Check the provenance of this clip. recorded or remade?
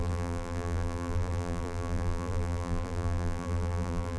remade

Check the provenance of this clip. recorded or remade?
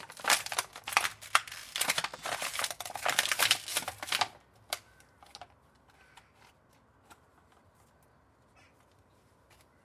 recorded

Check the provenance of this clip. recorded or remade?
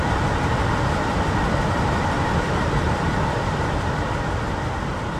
remade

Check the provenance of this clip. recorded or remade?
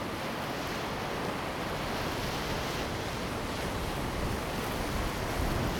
recorded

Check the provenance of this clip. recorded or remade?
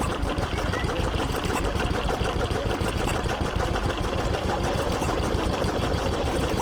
remade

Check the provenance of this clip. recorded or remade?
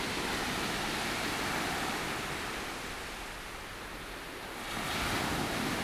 recorded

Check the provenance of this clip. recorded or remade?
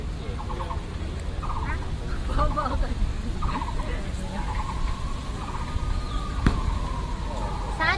recorded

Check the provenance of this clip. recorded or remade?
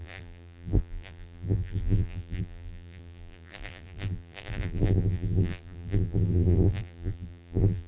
remade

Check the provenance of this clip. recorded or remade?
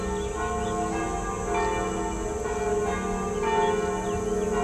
recorded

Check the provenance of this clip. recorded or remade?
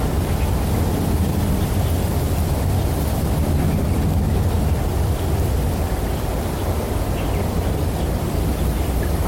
recorded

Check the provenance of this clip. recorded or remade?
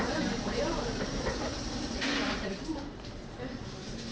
remade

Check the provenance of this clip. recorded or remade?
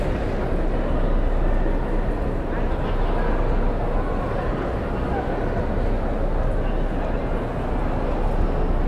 recorded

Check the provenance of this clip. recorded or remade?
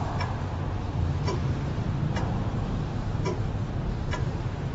remade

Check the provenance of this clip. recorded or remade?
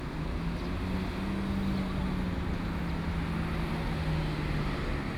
recorded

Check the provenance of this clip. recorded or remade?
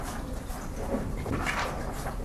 recorded